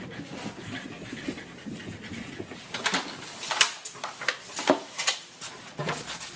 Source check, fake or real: real